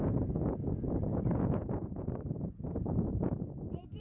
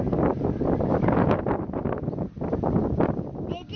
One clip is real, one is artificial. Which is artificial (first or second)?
first